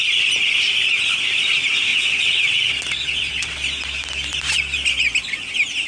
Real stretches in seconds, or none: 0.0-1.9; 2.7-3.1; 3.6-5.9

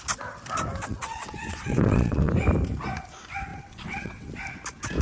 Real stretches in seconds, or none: 0.0-0.9; 2.3-3.5; 4.3-5.0

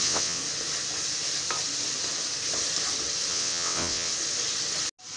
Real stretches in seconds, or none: 0.4-3.3; 4.1-5.2